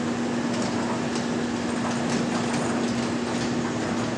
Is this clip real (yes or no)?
yes